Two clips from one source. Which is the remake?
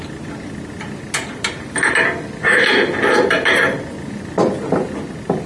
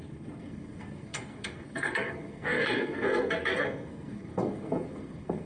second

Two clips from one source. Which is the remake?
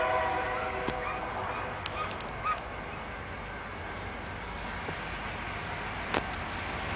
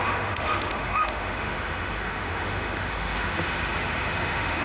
second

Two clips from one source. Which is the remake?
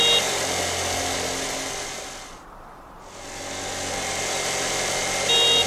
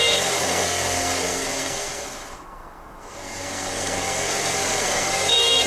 second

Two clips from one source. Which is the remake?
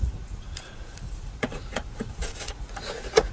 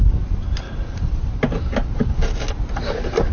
first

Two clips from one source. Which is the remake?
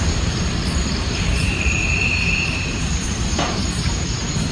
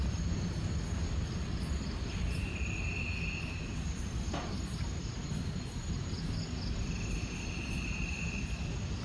first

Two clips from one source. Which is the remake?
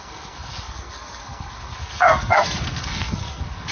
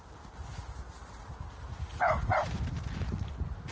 first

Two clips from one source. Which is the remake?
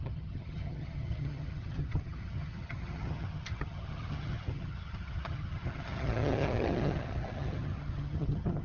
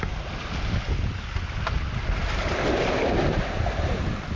first